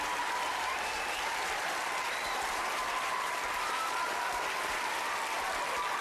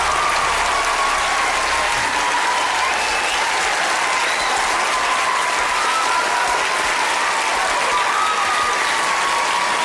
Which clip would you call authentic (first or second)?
second